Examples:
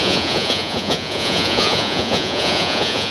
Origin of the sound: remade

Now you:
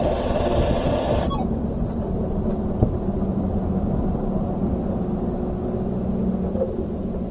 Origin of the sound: recorded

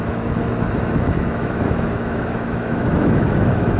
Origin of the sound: remade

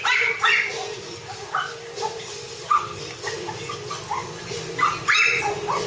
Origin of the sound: remade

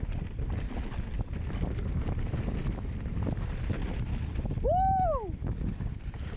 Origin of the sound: recorded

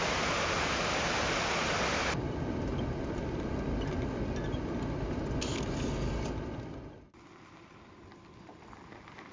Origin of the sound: recorded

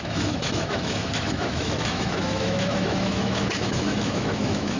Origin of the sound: remade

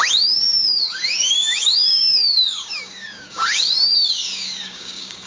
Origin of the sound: remade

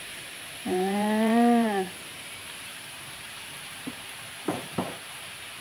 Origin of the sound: remade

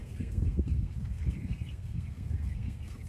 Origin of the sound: remade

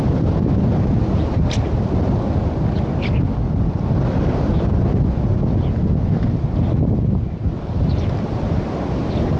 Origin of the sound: recorded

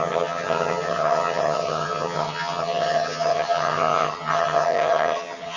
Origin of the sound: remade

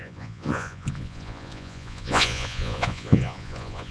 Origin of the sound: remade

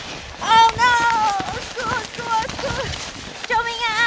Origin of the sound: recorded